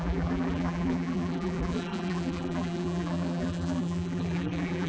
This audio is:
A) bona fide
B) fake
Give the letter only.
B